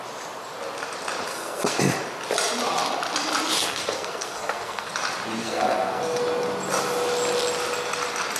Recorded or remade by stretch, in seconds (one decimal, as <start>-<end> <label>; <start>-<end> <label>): 0.0-1.3 recorded; 1.3-1.8 remade; 1.8-3.6 recorded; 3.6-4.9 remade; 4.9-5.4 recorded; 5.4-6.0 remade; 6.0-8.4 recorded